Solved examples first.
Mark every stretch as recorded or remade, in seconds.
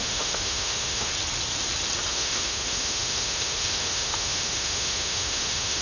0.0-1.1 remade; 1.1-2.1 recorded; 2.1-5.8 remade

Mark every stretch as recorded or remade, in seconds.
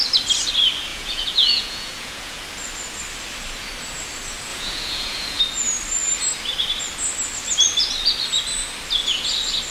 0.0-0.9 recorded; 0.9-2.4 remade; 2.4-4.5 recorded; 4.5-5.4 remade; 5.4-9.7 recorded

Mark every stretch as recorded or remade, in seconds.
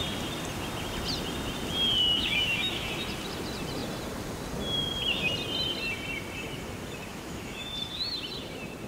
0.0-2.0 recorded; 2.0-2.9 remade; 2.9-7.1 recorded; 7.1-7.7 remade; 7.7-8.9 recorded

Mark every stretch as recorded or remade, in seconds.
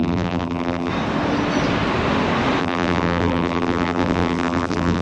0.0-0.9 remade; 0.9-2.6 recorded; 2.6-5.0 remade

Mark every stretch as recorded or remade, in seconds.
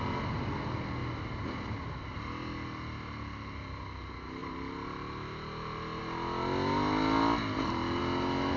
0.0-8.6 recorded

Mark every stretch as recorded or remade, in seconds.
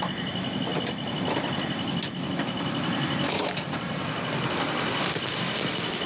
0.0-6.1 recorded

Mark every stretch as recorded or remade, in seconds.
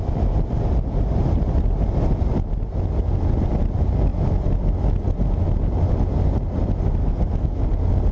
0.0-7.0 recorded; 7.0-7.6 remade; 7.6-8.1 recorded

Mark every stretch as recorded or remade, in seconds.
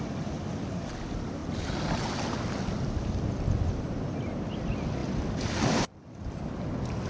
0.0-5.0 recorded; 5.0-6.4 remade; 6.4-7.1 recorded